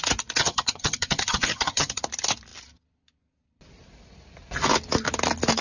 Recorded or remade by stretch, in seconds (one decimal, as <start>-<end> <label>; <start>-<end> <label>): 0.0-0.4 recorded; 0.4-2.0 remade; 2.0-5.6 recorded